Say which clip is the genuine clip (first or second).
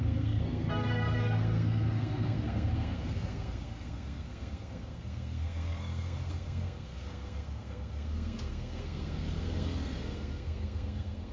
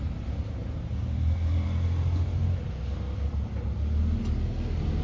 second